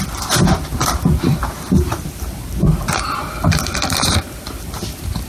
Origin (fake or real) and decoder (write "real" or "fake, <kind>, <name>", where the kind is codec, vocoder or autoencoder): fake, vocoder, BigVGAN v2